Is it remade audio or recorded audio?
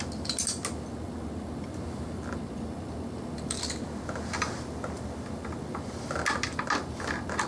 recorded